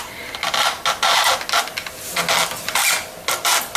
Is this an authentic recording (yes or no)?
yes